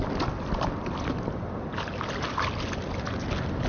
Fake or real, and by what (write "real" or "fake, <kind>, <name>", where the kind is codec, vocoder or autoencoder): real